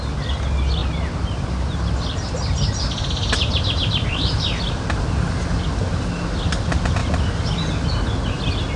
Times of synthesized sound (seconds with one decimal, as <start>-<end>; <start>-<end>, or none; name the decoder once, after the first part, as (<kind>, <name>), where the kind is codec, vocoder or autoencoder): none